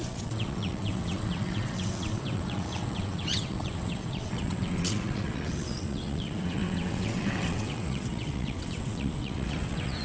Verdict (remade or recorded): remade